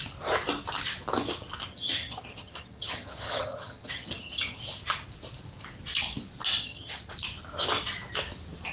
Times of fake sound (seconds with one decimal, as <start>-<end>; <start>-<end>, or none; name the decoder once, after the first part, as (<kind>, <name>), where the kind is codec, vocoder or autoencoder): 1.7-4.6 (vocoder, HiFi-GAN); 6.6-7.1

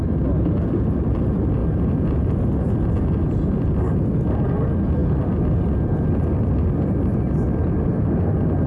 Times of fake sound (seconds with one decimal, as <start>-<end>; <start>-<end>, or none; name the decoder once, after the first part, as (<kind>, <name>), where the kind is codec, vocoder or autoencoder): none

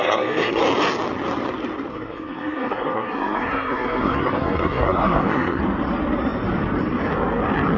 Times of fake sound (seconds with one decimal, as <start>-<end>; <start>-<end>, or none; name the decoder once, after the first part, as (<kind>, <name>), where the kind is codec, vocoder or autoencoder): 0.0-0.6 (codec, SNAC); 1.9-5.6

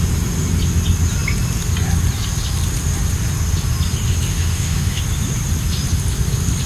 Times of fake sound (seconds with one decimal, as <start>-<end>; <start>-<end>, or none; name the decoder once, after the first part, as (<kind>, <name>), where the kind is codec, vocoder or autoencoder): 4.3-5.0 (autoencoder, DAC-VAE)

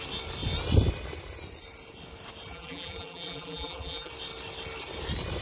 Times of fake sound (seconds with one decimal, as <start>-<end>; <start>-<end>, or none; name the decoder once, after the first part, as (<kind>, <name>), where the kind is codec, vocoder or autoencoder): 2.5-4.1 (vocoder, BigVGAN v2)

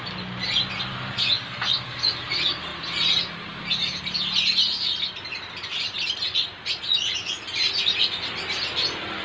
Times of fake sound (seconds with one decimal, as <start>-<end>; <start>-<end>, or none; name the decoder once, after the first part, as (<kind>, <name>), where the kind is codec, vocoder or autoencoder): none